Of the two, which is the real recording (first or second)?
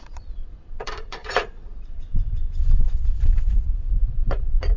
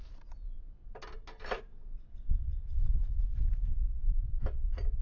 second